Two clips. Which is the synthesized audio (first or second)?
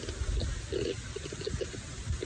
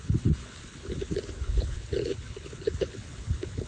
second